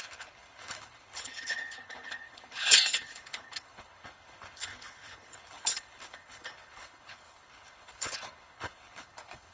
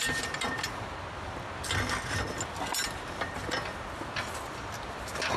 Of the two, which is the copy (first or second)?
first